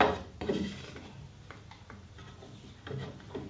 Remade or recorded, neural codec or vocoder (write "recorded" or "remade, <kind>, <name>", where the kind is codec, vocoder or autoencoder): recorded